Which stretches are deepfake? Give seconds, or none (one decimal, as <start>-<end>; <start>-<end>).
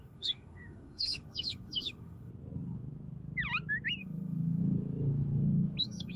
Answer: 0.0-2.3; 4.0-4.6; 5.8-6.2